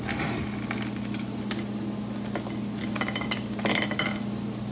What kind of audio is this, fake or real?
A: real